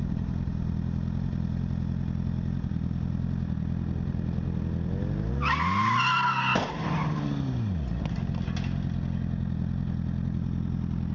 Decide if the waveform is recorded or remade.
recorded